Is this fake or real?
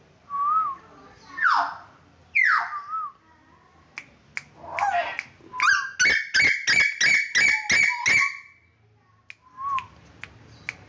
real